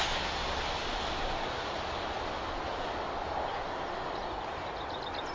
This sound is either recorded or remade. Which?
recorded